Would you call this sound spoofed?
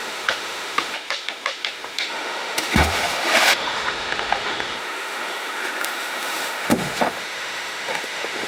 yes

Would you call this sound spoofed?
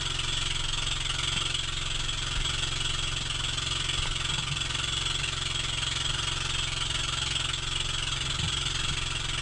no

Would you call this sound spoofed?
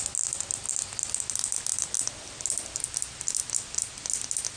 no